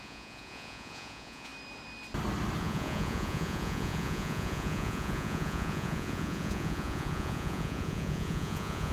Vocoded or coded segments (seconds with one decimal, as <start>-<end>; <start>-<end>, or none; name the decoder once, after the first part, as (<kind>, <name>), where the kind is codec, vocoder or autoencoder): 0.0-1.5 (vocoder, Vocos); 2.6-8.9